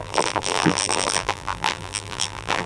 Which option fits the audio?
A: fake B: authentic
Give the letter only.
A